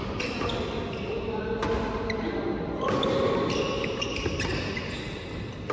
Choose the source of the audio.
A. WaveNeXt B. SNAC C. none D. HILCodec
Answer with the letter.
C